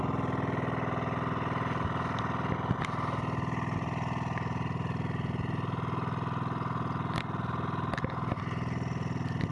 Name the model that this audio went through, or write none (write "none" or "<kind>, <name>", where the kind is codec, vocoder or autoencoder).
none